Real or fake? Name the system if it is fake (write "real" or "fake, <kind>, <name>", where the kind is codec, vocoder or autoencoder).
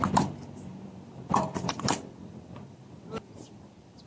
fake, vocoder, BigVGAN v2